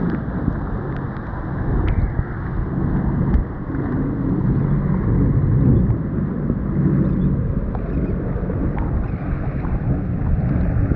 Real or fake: real